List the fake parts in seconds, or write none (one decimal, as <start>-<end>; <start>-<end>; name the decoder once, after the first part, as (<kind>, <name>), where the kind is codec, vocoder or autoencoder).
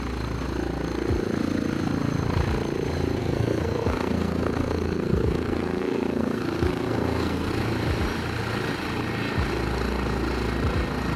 3.2-7.5 (codec, SNAC)